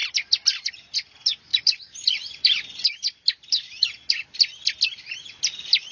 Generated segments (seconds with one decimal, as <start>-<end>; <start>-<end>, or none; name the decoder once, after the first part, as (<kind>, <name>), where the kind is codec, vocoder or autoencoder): 0.0-0.7 (vocoder, BigVGAN v2); 1.5-2.4